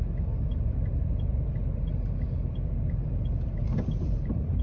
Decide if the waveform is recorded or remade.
remade